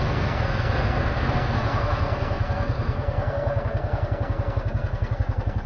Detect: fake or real fake